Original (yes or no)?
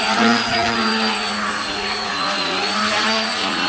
no